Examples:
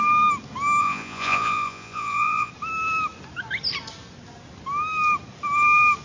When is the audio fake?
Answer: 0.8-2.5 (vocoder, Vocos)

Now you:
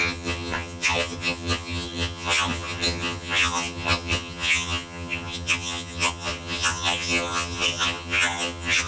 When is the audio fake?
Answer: 0.0-8.9 (vocoder, HiFi-GAN)